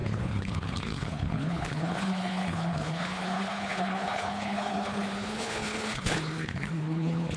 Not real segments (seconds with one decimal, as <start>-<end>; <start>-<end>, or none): 0.0-7.4